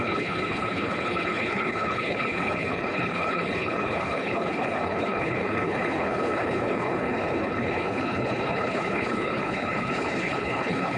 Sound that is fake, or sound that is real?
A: fake